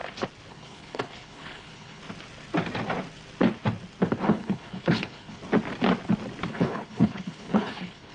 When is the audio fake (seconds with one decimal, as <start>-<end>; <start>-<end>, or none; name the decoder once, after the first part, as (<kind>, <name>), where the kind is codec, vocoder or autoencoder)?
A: 0.5-2.0 (codec, HILCodec); 4.3-5.4; 6.5-8.1